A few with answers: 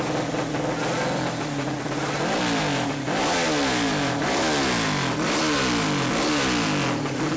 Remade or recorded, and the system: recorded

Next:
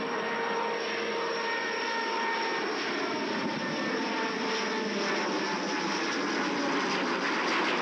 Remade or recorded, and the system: recorded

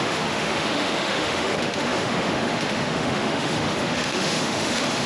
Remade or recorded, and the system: remade, autoencoder, DAC-VAE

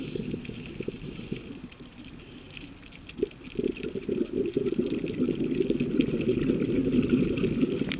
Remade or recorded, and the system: recorded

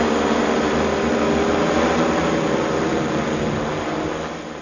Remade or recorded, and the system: recorded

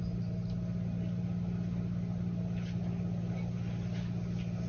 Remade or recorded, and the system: recorded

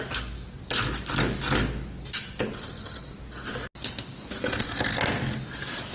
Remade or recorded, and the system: recorded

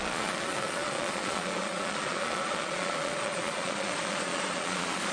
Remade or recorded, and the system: remade, vocoder, Vocos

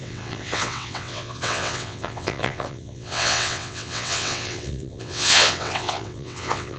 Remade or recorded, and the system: remade, vocoder, WaveNeXt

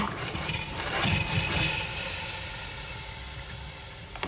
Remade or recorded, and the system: recorded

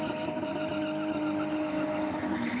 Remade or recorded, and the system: recorded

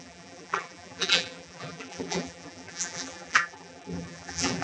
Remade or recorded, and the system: remade, vocoder, BigVGAN v2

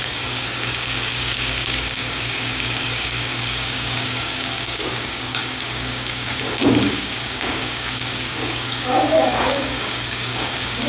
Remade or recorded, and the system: remade, codec, DAC